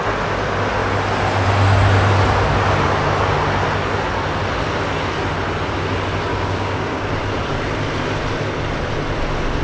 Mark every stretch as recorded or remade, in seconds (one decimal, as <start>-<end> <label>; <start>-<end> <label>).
0.0-6.3 recorded; 6.3-7.1 remade; 7.1-9.6 recorded